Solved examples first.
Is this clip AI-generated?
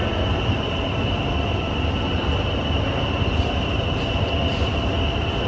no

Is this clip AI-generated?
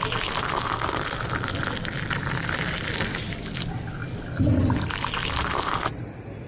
no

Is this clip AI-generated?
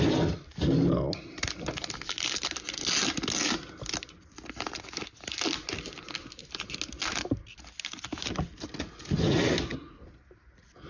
no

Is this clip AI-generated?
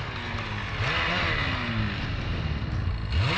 no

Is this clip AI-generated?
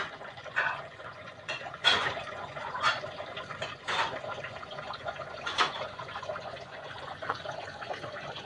yes